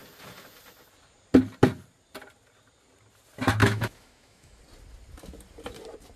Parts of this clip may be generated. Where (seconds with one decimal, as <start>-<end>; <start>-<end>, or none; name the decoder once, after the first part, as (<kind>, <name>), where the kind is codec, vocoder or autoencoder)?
3.6-4.6 (autoencoder, DAC-VAE)